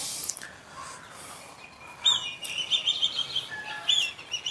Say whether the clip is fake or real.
real